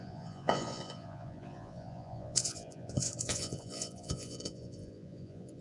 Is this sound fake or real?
fake